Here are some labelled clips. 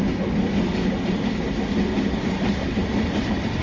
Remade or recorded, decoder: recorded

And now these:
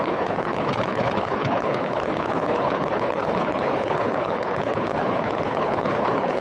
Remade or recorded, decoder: remade, codec, HILCodec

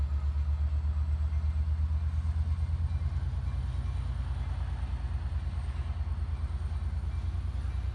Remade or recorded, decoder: recorded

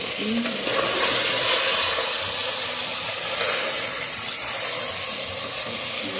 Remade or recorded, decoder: recorded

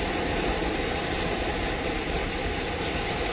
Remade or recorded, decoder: recorded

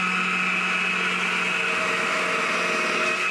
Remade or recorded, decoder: recorded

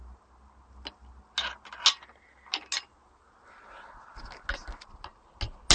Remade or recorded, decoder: recorded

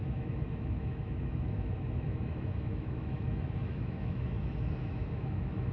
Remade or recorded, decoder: remade, autoencoder, DAC-VAE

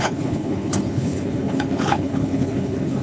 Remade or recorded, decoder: remade, codec, HILCodec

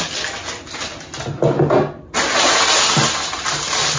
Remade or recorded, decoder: recorded